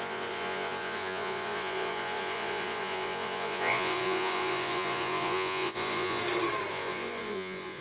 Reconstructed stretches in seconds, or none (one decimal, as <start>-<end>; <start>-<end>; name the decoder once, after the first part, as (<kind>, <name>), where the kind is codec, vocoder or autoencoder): 0.0-6.2 (vocoder, Vocos); 6.7-7.8